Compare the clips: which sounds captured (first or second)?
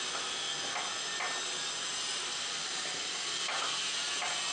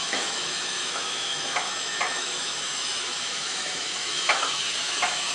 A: first